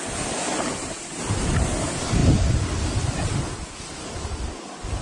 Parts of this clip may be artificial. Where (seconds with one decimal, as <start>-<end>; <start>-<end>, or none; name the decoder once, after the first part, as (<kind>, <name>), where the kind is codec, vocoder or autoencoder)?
none